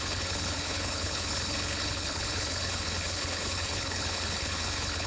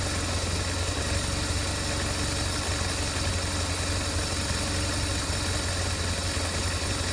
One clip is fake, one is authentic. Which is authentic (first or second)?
second